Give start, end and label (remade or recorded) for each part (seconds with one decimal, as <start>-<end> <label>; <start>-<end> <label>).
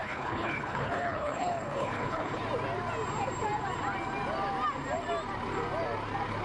0.0-2.4 remade; 2.4-6.4 recorded